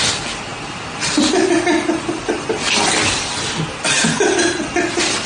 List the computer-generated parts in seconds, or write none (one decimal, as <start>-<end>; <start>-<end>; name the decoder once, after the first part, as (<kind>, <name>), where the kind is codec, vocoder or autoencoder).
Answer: none